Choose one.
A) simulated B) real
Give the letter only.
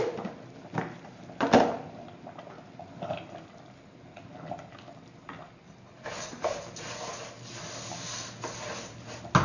B